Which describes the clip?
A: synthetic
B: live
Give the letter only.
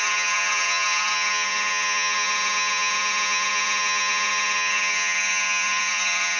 A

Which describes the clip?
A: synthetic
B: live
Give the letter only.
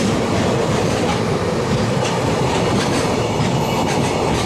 B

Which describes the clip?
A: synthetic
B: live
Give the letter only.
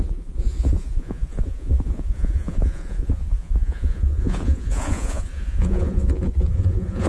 A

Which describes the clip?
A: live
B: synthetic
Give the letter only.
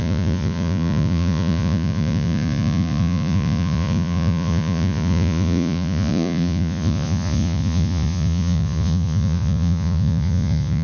B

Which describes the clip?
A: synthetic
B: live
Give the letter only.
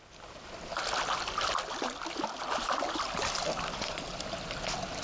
B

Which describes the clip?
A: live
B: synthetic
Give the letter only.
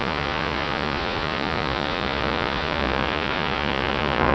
B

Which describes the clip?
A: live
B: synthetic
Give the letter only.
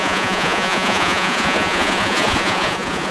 B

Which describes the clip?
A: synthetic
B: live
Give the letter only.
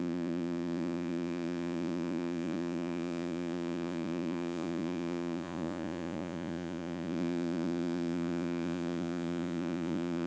A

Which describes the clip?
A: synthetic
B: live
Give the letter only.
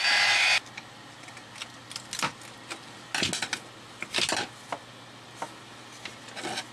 B